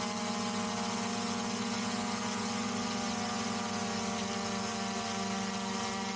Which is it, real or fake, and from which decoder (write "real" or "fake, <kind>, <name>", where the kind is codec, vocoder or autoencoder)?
real